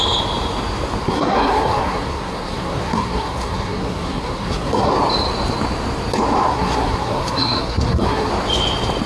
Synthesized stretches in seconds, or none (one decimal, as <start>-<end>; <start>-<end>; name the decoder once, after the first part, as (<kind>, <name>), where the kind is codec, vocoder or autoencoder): 1.0-4.9 (codec, SNAC); 6.5-8.3